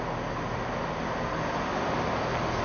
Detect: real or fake real